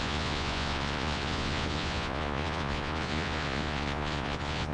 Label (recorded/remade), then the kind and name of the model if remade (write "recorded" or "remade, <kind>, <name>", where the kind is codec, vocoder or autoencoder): remade, vocoder, Vocos